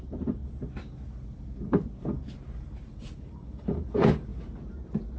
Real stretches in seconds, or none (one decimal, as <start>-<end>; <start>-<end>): 0.4-2.5; 4.3-5.2